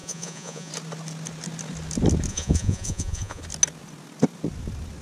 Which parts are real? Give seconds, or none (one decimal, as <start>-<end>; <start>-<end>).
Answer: 0.7-2.3; 3.4-5.0